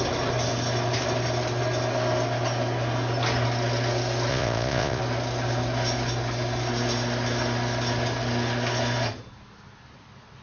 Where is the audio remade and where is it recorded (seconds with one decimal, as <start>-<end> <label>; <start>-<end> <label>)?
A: 0.0-4.3 recorded; 4.3-5.0 remade; 5.0-10.4 recorded